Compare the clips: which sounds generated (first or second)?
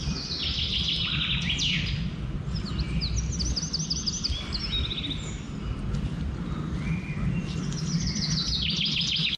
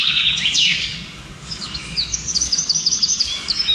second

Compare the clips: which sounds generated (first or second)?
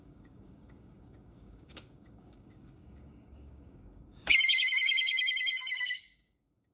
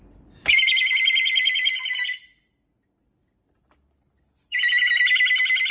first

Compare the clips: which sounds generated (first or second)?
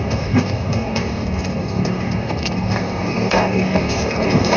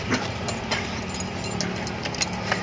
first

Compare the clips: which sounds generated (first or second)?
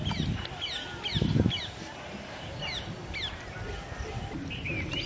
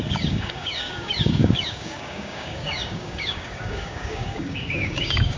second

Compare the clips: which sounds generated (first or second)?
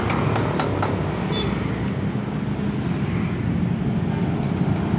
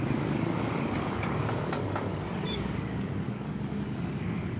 second